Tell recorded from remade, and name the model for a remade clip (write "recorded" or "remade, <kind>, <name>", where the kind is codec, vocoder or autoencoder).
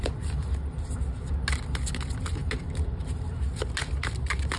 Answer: recorded